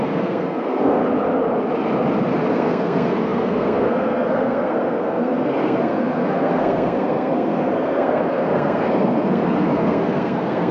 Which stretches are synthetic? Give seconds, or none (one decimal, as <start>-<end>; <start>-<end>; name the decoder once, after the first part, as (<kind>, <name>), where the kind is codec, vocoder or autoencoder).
0.0-1.0 (codec, SNAC); 2.5-10.7